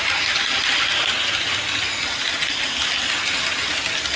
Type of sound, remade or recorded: recorded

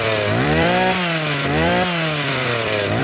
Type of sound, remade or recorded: remade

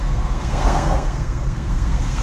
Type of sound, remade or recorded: remade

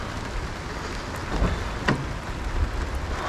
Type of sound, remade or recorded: recorded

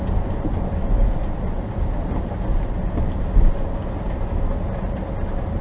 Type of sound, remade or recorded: recorded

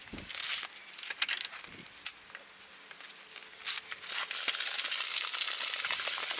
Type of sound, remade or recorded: recorded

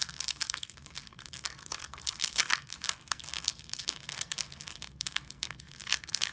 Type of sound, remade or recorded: remade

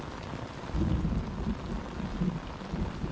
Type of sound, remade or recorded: recorded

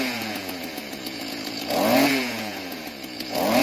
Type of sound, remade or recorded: remade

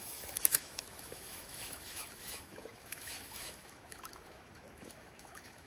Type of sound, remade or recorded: remade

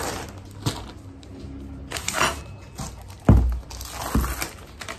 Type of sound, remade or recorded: recorded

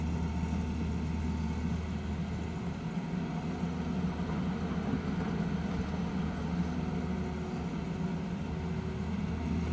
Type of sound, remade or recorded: recorded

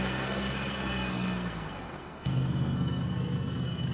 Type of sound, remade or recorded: remade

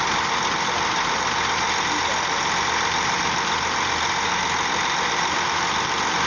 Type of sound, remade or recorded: recorded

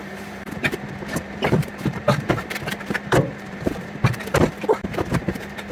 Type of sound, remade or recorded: remade